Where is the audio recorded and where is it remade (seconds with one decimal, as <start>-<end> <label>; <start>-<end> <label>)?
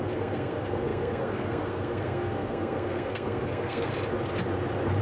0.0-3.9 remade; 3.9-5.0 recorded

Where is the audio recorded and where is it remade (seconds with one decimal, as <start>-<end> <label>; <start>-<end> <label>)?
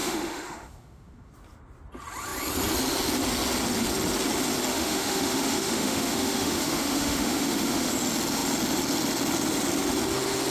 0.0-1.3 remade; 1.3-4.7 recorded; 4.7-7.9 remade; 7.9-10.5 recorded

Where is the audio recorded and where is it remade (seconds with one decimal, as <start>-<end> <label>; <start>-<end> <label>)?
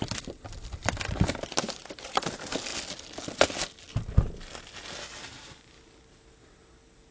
0.0-2.7 remade; 2.7-7.1 recorded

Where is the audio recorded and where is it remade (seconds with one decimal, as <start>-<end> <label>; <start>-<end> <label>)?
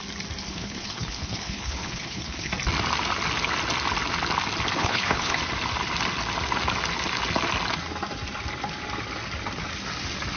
0.0-0.4 recorded; 0.4-2.5 remade; 2.5-4.8 recorded; 4.8-5.4 remade; 5.4-10.4 recorded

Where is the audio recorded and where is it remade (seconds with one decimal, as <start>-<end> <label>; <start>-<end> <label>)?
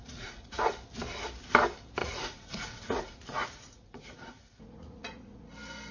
0.0-0.7 remade; 0.7-2.0 recorded; 2.0-5.5 remade; 5.5-5.9 recorded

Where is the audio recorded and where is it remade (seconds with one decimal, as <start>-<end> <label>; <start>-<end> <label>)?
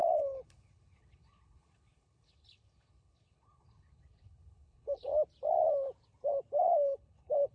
0.0-5.1 remade; 5.1-6.5 recorded; 6.5-7.5 remade